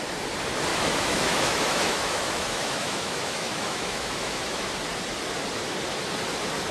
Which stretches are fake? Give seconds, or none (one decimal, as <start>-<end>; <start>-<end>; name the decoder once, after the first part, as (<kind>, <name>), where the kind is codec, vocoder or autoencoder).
0.7-4.7 (autoencoder, DAC-VAE)